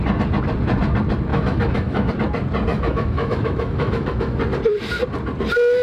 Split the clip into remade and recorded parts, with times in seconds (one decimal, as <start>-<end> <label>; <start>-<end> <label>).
0.0-1.3 recorded; 1.3-2.1 remade; 2.1-2.7 recorded; 2.7-4.4 remade; 4.4-5.8 recorded